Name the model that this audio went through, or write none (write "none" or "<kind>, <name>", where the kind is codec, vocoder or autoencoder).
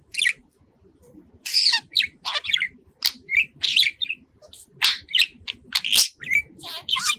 none